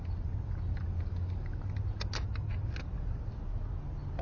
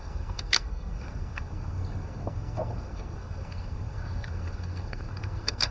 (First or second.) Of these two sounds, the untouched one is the first